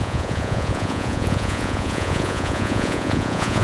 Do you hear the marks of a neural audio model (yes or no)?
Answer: yes